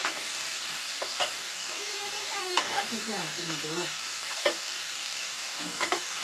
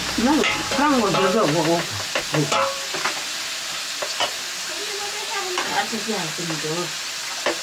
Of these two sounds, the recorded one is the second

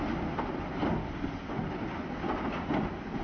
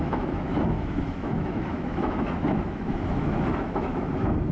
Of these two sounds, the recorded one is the first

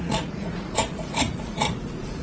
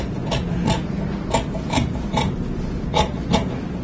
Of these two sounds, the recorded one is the second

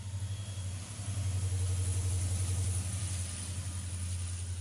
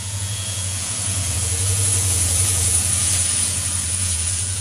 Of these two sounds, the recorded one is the first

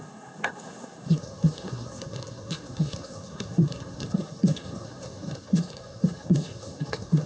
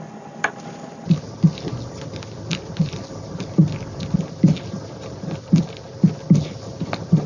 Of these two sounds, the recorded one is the second